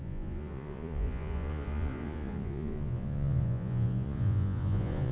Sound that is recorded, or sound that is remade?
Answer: remade